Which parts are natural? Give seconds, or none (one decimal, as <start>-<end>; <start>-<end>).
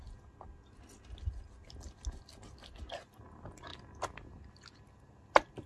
0.0-5.7